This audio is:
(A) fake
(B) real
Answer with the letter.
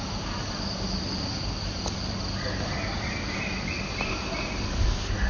B